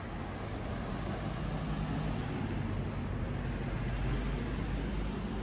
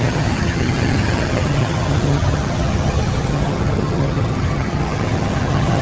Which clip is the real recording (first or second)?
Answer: first